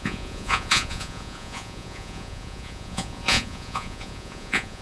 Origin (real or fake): fake